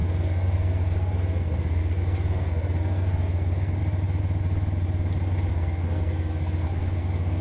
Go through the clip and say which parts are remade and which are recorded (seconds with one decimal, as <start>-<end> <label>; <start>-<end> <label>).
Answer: 0.0-3.8 remade; 3.8-5.5 recorded; 5.5-7.4 remade